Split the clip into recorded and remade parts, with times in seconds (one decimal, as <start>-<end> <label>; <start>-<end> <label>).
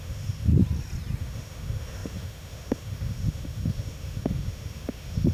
0.0-0.5 remade; 0.5-1.2 recorded; 1.2-5.3 remade